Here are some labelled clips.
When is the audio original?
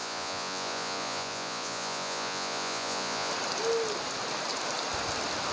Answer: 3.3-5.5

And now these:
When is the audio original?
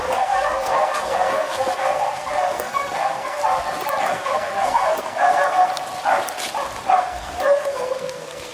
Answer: 3.4-4.0; 5.7-6.9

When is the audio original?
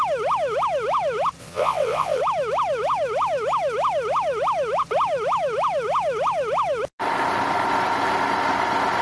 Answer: 0.0-1.4; 2.2-9.0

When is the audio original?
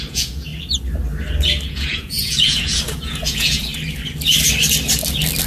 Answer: 0.5-1.7; 3.7-5.5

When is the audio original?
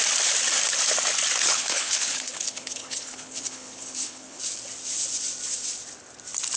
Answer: 0.0-1.4; 4.4-6.6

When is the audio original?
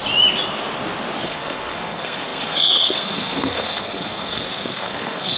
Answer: 0.0-1.2